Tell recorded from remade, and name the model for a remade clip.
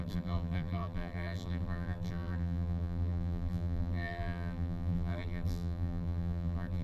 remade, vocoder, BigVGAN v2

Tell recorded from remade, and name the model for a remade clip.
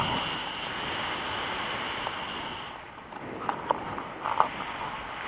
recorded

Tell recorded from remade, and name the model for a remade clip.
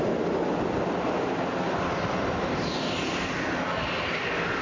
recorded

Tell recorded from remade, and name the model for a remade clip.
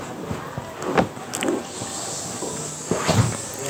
recorded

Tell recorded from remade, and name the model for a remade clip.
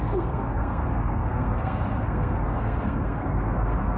remade, codec, SNAC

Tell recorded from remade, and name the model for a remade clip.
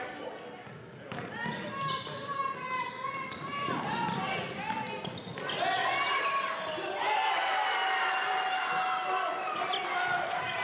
recorded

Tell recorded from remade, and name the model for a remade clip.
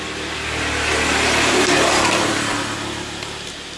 recorded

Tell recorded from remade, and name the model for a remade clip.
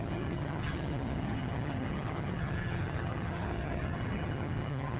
remade, vocoder, HiFi-GAN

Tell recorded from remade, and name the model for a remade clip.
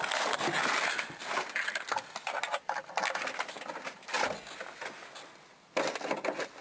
recorded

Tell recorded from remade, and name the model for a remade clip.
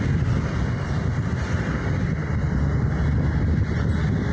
recorded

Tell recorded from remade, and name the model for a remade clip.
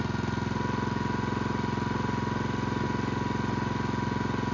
recorded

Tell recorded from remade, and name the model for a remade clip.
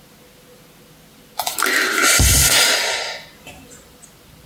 recorded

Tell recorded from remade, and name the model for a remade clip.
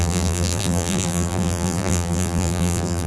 remade, vocoder, BigVGAN v2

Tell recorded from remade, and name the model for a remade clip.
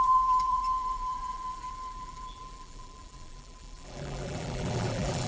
remade, vocoder, BigVGAN v2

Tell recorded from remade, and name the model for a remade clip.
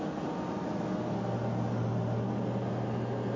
recorded